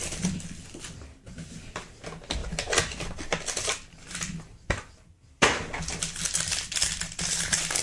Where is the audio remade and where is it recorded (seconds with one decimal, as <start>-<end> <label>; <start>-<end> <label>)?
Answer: 0.0-7.8 recorded